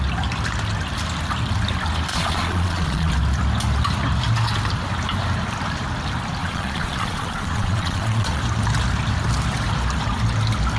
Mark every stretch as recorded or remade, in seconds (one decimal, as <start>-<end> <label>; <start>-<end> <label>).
0.0-2.1 recorded; 2.1-3.1 remade; 3.1-6.4 recorded; 6.4-8.4 remade; 8.4-10.8 recorded